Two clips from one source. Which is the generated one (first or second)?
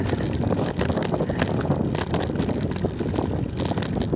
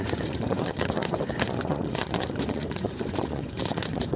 second